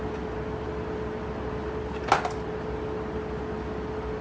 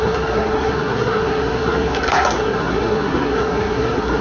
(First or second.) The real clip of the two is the first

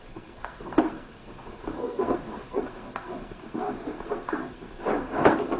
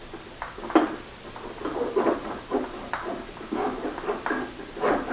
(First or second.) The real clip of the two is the second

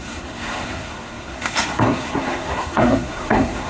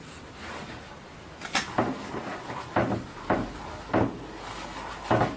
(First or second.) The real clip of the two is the second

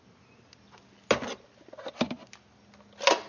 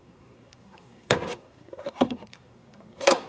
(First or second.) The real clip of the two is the first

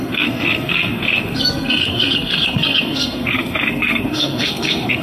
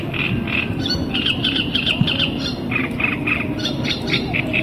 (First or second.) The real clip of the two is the second